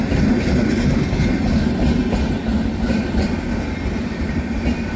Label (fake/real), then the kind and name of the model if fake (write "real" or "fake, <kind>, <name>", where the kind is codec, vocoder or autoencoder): real